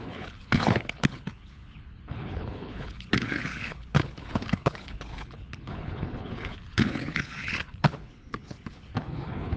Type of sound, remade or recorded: remade